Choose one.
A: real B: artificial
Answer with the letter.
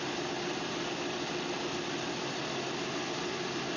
A